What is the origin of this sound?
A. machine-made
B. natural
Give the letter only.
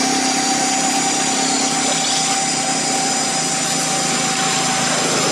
B